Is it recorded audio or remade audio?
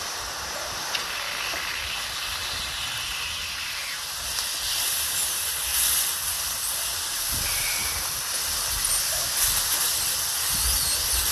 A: recorded